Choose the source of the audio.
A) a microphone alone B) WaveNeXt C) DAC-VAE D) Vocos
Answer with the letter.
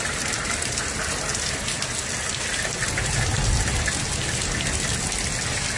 A